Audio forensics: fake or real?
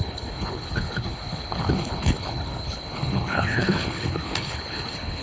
fake